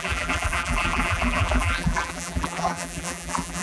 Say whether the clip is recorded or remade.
remade